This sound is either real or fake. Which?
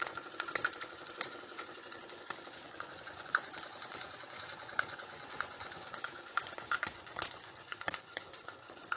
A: fake